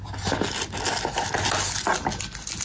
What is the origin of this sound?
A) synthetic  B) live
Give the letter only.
B